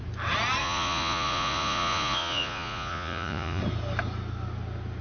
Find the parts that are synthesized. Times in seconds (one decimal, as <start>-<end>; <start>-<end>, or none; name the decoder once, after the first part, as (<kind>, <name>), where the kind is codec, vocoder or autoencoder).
0.6-3.6 (vocoder, Vocos)